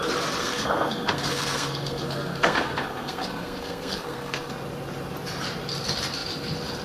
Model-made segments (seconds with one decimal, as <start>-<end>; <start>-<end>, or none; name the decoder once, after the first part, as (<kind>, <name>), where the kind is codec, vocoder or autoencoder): 0.4-4.5 (codec, SNAC)